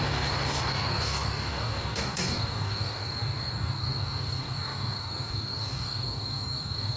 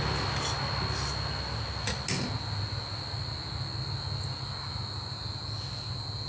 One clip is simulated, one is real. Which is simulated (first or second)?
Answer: first